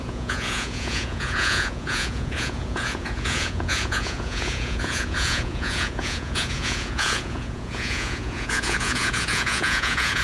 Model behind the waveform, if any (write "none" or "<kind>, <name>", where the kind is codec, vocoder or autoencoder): vocoder, Vocos